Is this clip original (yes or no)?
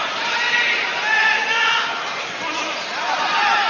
yes